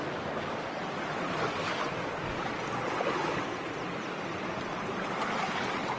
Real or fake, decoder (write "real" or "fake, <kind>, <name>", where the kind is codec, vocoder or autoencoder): real